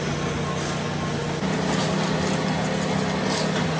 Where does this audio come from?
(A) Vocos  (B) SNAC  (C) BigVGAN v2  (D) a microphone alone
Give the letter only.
D